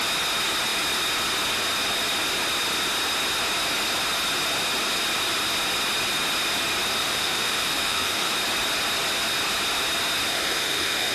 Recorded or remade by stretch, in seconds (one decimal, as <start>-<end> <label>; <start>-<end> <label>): 0.0-7.0 recorded; 7.0-8.3 remade; 8.3-10.3 recorded; 10.3-11.1 remade